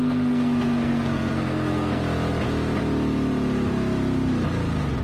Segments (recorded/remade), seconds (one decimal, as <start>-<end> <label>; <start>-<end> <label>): 0.0-2.0 remade; 2.0-5.0 recorded